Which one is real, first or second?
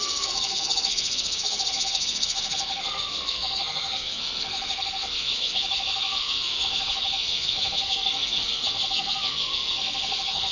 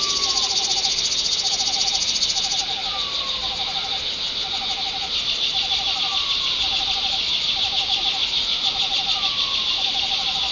second